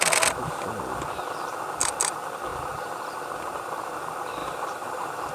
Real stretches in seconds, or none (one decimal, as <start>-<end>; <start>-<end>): 0.0-4.4